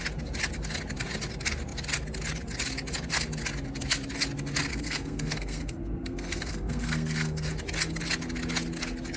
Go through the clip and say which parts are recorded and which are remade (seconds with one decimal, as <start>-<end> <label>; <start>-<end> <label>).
0.0-4.7 recorded; 4.7-7.5 remade; 7.5-9.2 recorded